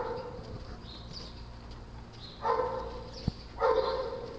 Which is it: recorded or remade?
recorded